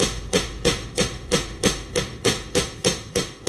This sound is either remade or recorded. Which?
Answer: remade